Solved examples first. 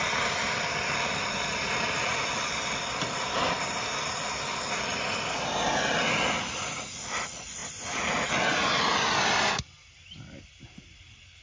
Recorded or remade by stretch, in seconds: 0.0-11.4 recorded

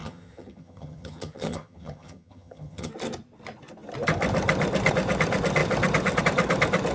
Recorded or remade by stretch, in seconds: 0.0-2.9 remade; 2.9-6.9 recorded

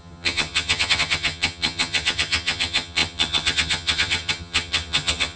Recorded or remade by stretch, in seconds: 0.0-5.4 remade

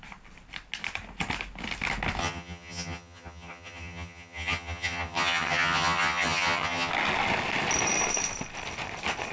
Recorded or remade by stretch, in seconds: 0.0-2.2 recorded; 2.2-6.9 remade; 6.9-9.3 recorded

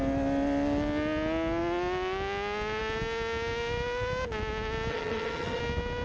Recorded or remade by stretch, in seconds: 0.0-4.9 recorded; 4.9-5.6 remade; 5.6-6.0 recorded

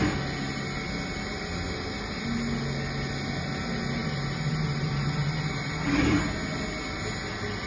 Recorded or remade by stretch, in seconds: 0.0-7.7 recorded

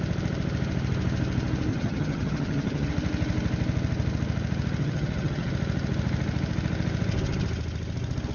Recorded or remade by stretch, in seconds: 0.0-1.7 recorded; 1.7-2.9 remade; 2.9-4.8 recorded; 4.8-5.5 remade; 5.5-8.3 recorded

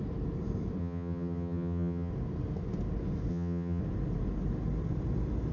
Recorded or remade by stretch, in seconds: 0.0-0.8 recorded; 0.8-2.1 remade; 2.1-3.3 recorded; 3.3-3.8 remade; 3.8-5.5 recorded